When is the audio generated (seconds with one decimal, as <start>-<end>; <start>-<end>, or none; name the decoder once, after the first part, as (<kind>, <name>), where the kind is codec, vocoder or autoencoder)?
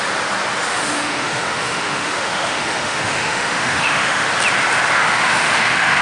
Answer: 0.7-4.3 (autoencoder, DAC-VAE); 5.0-6.0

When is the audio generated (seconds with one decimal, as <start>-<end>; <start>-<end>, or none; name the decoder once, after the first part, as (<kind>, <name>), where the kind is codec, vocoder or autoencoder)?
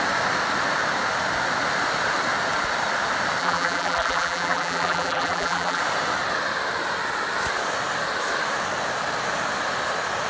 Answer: 3.4-5.8 (vocoder, BigVGAN v2)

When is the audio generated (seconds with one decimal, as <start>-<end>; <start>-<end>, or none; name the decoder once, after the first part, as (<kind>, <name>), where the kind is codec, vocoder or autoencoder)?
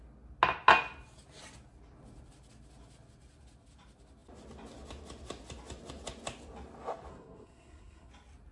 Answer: 7.1-8.1 (codec, SNAC)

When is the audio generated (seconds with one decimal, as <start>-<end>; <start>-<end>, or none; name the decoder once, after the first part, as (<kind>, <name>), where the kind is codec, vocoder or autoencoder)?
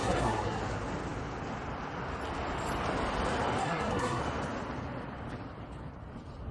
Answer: 0.0-0.6 (codec, SNAC); 3.6-4.2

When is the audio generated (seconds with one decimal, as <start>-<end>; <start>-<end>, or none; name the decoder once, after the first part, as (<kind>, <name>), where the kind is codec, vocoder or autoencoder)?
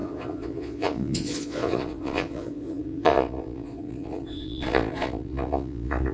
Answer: 0.0-6.1 (vocoder, Vocos)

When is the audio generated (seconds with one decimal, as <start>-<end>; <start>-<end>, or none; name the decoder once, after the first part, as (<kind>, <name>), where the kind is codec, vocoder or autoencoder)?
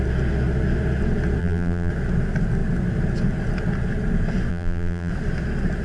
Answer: 1.4-1.9 (vocoder, BigVGAN v2); 4.5-5.1